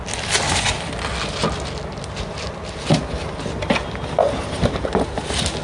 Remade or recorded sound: recorded